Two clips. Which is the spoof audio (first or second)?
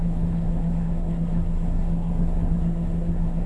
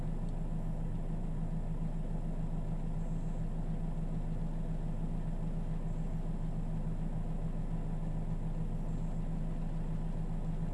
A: first